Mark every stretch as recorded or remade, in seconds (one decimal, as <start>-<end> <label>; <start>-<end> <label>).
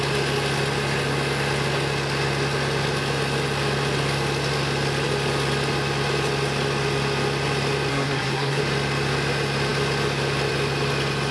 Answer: 0.0-7.9 recorded; 7.9-8.6 remade; 8.6-11.3 recorded